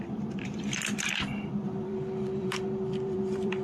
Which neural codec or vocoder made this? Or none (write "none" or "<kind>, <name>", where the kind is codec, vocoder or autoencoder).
vocoder, BigVGAN v2